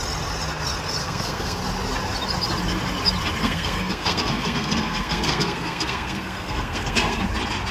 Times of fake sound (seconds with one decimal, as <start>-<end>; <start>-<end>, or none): 1.0-1.6; 3.4-7.2